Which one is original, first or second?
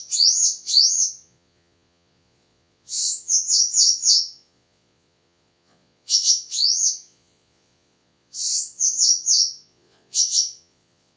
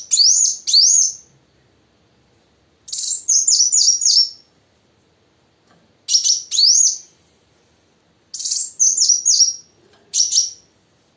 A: second